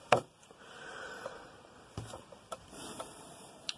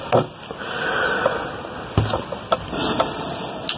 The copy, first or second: first